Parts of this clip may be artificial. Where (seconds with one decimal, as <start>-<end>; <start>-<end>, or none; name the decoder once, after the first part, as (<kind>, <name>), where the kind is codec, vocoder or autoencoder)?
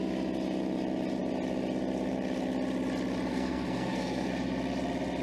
3.3-4.3 (codec, SNAC)